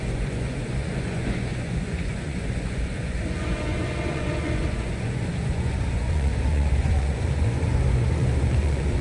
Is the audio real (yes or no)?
no